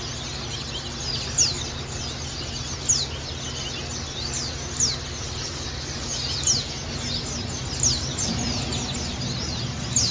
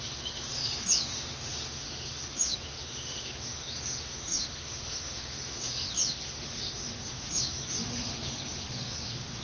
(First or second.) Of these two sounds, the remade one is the second